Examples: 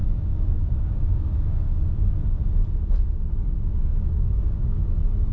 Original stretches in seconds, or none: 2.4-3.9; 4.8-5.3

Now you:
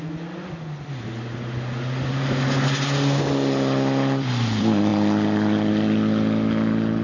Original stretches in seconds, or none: 0.0-7.0

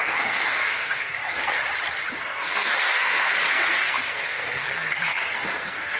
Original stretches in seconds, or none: 1.6-2.2